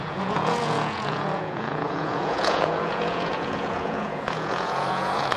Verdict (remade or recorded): remade